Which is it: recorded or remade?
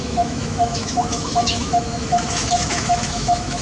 remade